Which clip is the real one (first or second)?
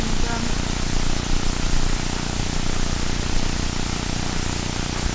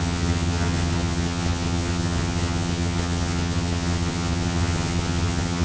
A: first